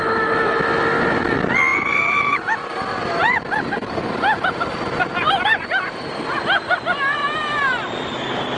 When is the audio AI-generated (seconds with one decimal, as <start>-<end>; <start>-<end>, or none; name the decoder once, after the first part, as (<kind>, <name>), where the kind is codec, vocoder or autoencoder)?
1.7-6.2 (vocoder, BigVGAN v2); 7.2-7.9